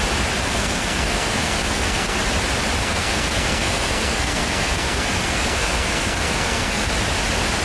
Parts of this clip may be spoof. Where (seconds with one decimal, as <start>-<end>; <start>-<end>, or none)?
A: 0.4-2.2; 2.8-6.9